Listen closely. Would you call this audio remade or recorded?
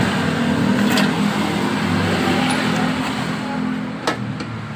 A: recorded